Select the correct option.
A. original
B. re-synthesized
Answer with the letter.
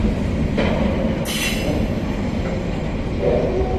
A